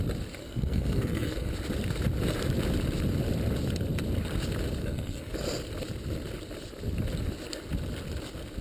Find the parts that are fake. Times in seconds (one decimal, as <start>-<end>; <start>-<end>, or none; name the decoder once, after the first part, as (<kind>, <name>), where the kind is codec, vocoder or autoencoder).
0.4-1.5 (codec, SNAC); 4.8-5.3

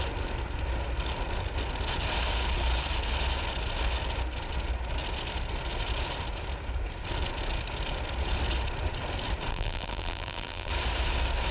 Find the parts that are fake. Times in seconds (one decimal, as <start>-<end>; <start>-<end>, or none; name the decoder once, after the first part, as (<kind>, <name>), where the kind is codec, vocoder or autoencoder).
9.5-10.7 (vocoder, BigVGAN v2)